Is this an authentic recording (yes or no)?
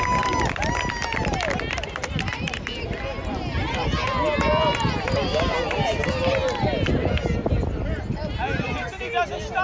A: yes